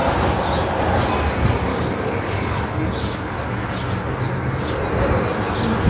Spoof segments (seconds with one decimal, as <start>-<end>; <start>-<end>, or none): 1.7-3.5